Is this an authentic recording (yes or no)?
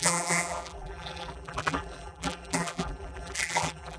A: no